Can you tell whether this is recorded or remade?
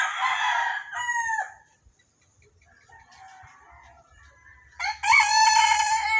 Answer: recorded